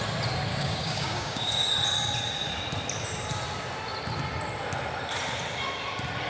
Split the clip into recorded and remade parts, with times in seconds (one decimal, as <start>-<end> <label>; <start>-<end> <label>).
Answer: 0.0-0.5 recorded; 0.5-1.7 remade; 1.7-6.3 recorded